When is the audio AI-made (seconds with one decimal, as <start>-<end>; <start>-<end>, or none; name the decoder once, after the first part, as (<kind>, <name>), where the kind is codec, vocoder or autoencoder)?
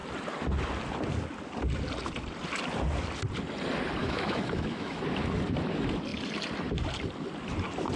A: 4.0-5.0 (autoencoder, DAC-VAE)